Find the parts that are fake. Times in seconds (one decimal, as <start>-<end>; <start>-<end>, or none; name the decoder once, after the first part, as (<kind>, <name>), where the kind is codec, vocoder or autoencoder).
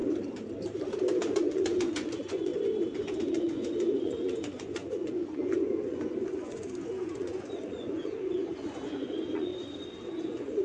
1.2-2.5 (vocoder, Vocos); 3.2-9.5; 10.2-10.6